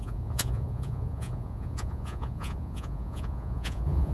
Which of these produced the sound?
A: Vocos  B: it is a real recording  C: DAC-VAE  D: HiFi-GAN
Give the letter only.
A